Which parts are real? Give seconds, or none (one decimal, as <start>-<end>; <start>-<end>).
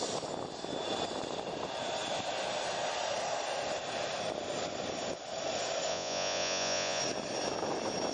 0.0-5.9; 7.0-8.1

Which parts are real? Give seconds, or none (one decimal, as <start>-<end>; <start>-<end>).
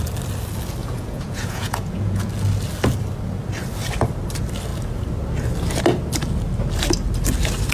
0.0-0.8; 2.3-7.7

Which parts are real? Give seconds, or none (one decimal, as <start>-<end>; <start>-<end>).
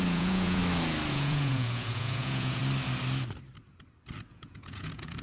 0.6-1.1; 2.6-4.3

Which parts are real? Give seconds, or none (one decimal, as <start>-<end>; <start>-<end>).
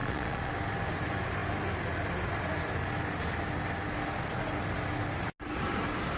0.5-6.2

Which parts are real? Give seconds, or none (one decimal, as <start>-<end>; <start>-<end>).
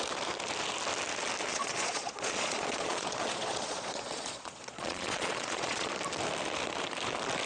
0.0-1.5; 5.9-7.5